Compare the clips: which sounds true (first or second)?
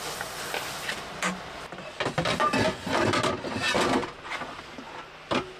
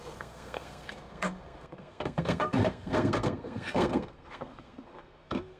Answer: first